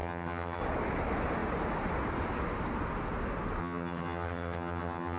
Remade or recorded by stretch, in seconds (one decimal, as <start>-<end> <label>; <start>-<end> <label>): 0.0-0.6 remade; 0.6-3.6 recorded; 3.6-5.2 remade